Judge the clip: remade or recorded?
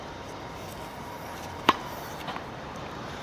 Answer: remade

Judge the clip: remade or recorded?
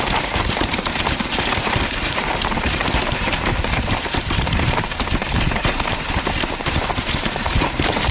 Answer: remade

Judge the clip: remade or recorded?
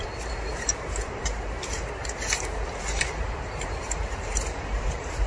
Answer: remade